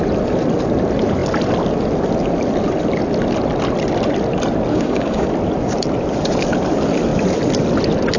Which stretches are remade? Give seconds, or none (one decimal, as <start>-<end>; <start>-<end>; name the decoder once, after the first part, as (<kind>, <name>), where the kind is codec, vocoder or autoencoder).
4.7-5.3 (codec, DAC)